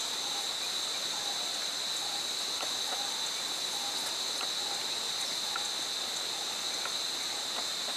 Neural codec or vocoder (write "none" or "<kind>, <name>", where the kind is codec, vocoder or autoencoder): none